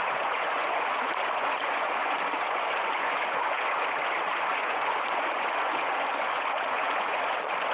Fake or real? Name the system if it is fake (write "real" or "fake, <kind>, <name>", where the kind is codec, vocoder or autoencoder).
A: fake, vocoder, Vocos